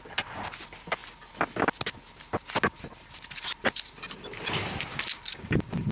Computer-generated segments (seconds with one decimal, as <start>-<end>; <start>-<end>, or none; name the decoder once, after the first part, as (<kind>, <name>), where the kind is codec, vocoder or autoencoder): none